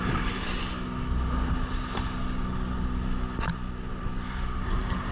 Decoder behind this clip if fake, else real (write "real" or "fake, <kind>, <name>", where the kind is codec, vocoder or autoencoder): real